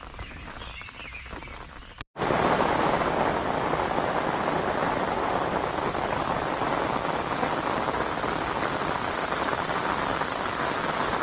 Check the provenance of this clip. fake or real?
real